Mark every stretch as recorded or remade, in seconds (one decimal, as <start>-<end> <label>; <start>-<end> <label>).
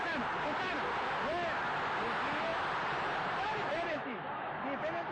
0.0-2.5 recorded; 2.5-4.6 remade; 4.6-5.1 recorded